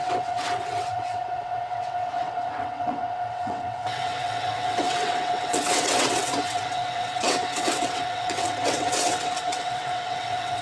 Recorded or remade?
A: remade